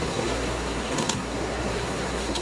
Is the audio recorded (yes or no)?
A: no